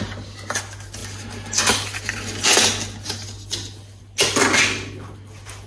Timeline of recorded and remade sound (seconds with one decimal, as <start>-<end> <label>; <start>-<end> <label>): 0.0-5.7 recorded